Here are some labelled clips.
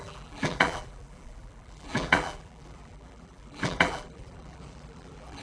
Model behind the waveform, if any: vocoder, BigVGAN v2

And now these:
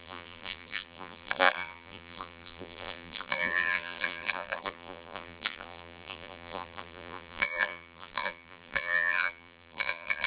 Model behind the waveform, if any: vocoder, BigVGAN v2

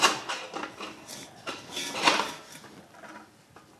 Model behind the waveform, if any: none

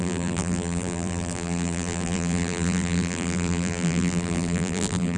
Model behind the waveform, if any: vocoder, BigVGAN v2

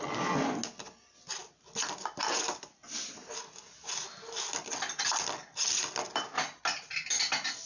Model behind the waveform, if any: none